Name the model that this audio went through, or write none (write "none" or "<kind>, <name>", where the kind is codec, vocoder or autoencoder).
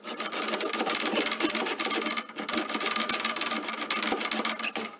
none